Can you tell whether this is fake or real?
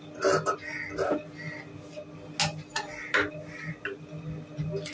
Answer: real